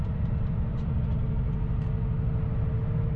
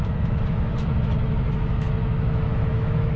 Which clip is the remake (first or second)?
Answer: second